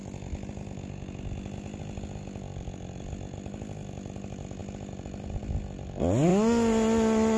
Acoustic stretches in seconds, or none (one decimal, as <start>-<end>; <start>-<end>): 0.0-7.4